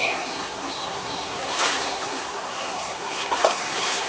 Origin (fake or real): fake